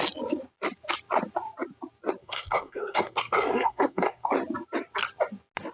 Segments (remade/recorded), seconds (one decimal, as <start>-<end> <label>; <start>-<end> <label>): 0.0-2.2 recorded; 2.2-4.3 remade; 4.3-5.7 recorded